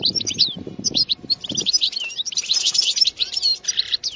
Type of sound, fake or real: fake